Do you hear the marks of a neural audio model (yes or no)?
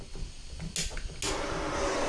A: no